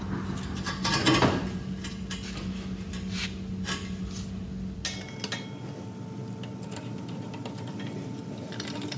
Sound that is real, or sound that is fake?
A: real